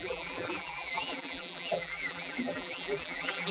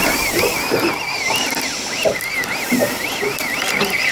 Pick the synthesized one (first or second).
first